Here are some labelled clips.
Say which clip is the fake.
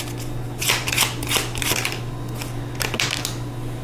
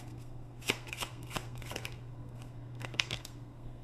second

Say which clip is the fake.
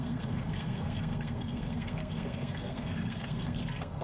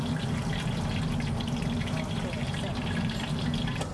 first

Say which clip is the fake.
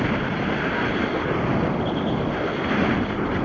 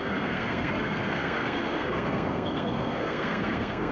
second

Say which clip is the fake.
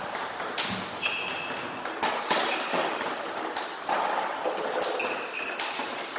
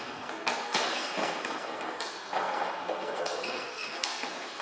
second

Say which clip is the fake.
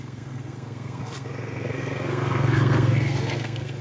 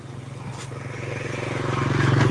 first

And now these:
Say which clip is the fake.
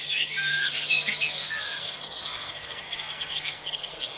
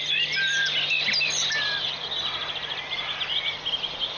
first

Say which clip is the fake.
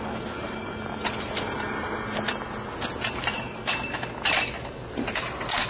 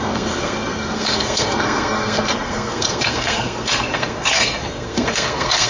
second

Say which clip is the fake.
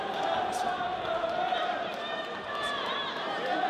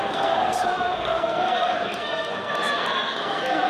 second